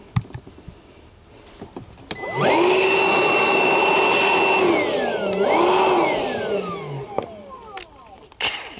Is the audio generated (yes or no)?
no